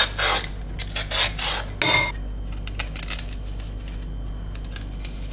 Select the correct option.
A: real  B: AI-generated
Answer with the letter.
A